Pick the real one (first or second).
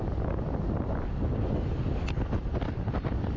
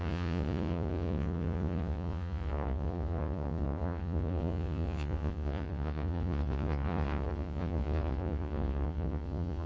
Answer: first